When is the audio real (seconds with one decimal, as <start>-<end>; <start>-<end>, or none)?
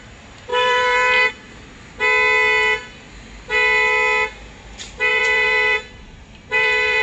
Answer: 0.0-0.5; 1.3-5.1